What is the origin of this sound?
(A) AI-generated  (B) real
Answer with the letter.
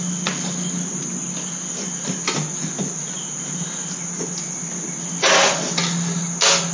B